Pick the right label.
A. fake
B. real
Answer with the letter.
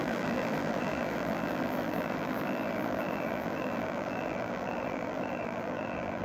A